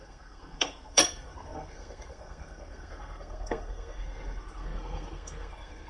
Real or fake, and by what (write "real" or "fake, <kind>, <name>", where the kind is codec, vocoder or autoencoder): fake, codec, SNAC